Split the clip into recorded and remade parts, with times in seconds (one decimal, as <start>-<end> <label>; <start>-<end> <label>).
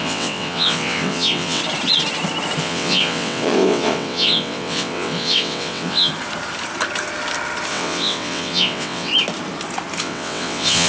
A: 0.0-1.6 remade; 1.6-2.6 recorded; 2.6-6.1 remade; 6.1-7.7 recorded; 7.7-9.1 remade; 9.1-10.0 recorded; 10.0-10.9 remade